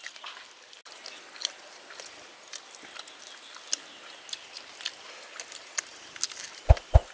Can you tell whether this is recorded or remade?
recorded